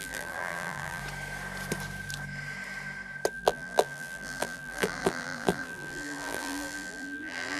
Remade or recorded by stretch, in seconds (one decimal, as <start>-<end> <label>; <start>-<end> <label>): 0.0-1.0 remade; 1.0-3.3 recorded; 3.3-7.6 remade